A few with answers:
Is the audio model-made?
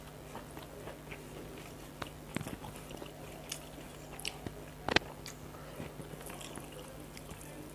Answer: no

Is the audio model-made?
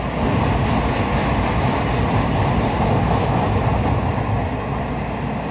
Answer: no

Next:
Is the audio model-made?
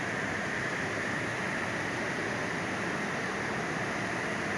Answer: no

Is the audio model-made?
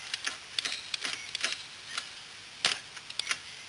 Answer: no